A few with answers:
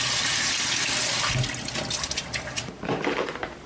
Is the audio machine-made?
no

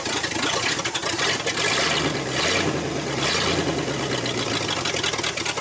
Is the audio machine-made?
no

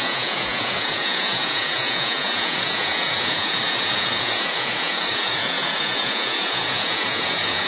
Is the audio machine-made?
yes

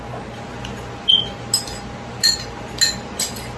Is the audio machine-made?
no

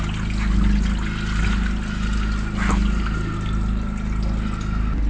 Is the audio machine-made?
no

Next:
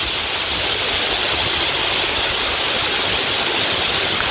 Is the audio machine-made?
no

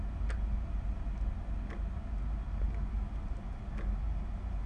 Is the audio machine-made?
no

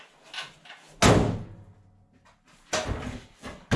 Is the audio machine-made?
no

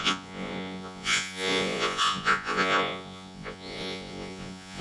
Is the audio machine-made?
yes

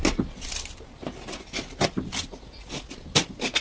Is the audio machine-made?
no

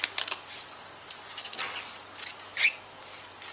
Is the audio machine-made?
no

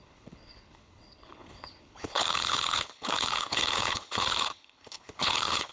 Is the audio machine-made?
yes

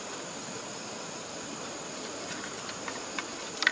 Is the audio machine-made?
no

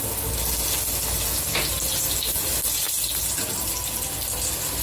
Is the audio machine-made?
no